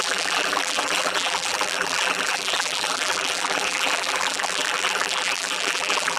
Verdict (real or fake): fake